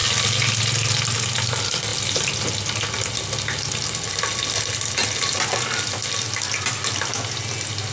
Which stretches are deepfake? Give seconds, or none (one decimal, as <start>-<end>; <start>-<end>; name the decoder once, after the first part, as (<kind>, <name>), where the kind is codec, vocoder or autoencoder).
none